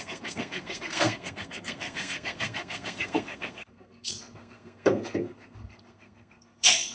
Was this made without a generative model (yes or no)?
no